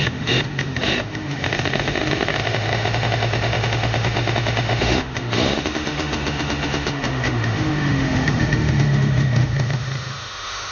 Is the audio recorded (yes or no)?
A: no